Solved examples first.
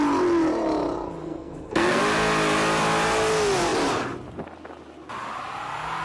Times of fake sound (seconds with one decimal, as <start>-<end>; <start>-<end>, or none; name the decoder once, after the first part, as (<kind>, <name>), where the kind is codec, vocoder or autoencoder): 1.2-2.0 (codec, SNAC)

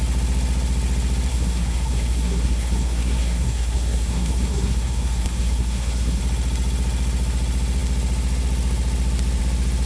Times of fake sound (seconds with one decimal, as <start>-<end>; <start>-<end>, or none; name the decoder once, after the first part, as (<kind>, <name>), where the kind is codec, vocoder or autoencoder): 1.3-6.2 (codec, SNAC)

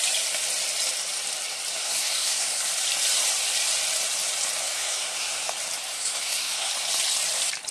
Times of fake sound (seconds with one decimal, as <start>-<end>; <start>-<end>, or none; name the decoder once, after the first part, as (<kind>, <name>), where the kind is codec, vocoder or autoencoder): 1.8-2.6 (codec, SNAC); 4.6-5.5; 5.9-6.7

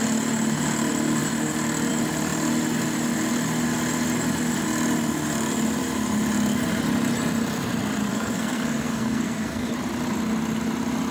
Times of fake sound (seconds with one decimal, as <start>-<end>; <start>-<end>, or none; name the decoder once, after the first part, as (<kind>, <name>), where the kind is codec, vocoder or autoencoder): 8.1-9.7 (codec, SNAC)